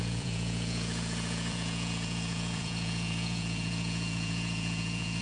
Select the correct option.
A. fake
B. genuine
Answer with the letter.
A